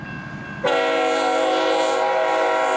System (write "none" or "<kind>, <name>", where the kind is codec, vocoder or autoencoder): none